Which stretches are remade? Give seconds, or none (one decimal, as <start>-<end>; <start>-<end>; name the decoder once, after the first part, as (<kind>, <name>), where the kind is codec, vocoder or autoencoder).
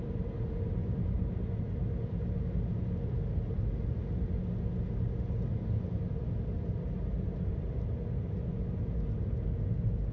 none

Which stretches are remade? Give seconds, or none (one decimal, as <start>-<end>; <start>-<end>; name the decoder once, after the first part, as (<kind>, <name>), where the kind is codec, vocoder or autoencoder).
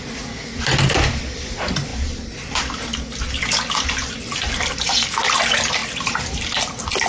none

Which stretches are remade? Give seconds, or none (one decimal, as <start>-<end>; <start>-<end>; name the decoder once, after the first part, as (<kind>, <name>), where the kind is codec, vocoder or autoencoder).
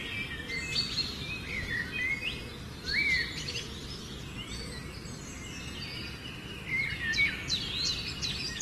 none